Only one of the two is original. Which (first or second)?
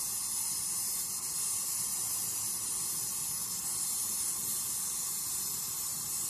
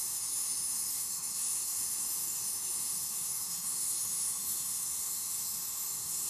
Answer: first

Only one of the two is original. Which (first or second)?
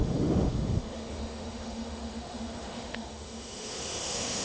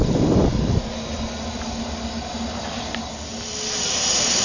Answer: second